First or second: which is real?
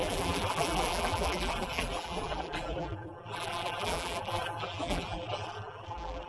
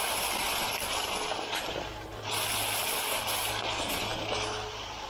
second